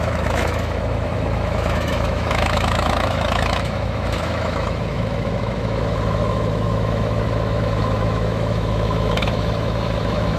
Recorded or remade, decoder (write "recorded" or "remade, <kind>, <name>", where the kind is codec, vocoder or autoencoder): remade, autoencoder, DAC-VAE